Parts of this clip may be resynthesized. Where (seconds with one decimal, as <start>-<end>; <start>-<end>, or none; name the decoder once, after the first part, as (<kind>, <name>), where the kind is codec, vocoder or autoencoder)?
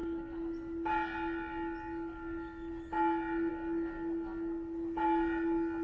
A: none